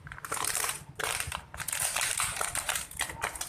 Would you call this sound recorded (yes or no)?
no